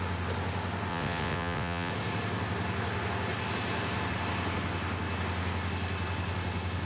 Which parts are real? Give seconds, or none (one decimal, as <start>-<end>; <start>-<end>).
0.0-0.9; 1.9-6.9

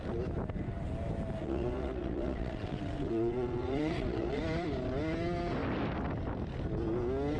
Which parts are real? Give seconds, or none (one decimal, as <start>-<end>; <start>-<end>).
0.0-1.4; 4.4-7.4